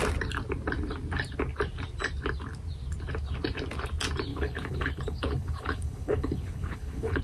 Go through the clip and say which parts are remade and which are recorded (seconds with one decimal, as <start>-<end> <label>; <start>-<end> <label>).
0.0-4.3 recorded; 4.3-7.2 remade